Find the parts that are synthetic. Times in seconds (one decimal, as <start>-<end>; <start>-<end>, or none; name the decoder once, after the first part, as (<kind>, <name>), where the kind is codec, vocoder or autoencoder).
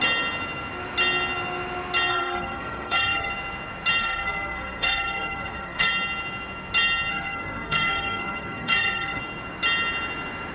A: 2.1-3.3 (codec, SNAC); 4.0-5.9; 7.1-9.2